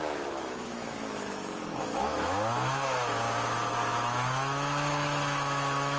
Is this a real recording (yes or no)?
no